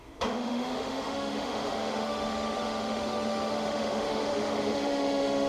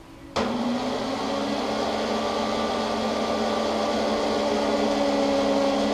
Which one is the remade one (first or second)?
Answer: first